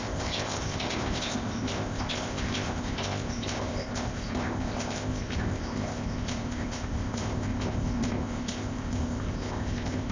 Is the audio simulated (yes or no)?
yes